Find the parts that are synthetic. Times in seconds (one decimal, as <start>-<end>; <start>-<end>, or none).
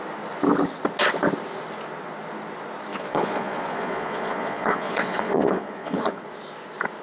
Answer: 2.9-6.2